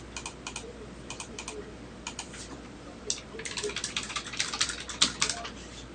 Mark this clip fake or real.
real